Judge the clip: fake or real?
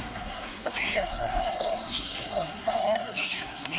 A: fake